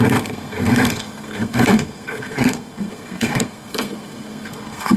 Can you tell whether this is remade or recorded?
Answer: remade